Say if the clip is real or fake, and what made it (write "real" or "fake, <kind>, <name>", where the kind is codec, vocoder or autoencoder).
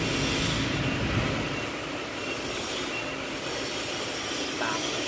real